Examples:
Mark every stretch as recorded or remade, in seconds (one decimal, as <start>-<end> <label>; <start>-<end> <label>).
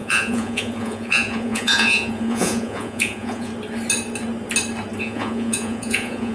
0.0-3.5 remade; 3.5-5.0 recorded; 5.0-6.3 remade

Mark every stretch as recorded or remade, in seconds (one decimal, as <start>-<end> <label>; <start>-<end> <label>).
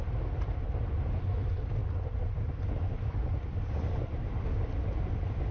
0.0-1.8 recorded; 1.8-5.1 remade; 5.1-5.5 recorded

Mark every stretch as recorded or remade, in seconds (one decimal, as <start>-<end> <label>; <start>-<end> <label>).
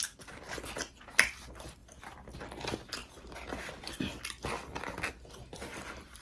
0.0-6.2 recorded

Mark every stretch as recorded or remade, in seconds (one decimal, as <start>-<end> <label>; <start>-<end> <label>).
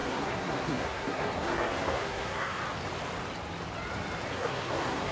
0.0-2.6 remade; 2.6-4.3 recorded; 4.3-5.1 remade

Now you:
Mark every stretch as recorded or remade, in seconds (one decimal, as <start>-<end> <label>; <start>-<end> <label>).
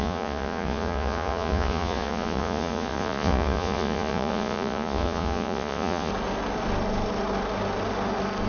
0.0-6.1 remade; 6.1-8.5 recorded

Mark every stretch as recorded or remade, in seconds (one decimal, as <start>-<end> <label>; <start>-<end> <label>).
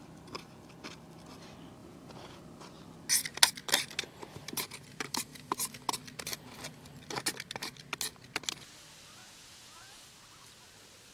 0.0-1.8 recorded; 1.8-2.4 remade; 2.4-9.2 recorded; 9.2-10.0 remade; 10.0-11.1 recorded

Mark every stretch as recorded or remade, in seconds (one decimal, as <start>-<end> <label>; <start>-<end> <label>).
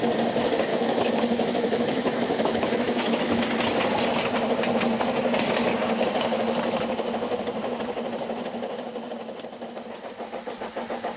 0.0-0.7 recorded; 0.7-3.4 remade; 3.4-11.2 recorded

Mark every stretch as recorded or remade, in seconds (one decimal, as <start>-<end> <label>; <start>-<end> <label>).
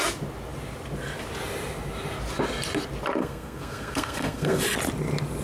0.0-3.2 recorded; 3.2-4.6 remade; 4.6-5.4 recorded